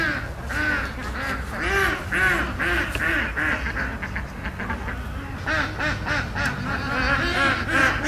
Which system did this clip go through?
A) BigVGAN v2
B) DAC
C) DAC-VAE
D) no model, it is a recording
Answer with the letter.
D